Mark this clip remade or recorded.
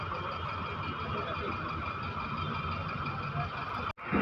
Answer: recorded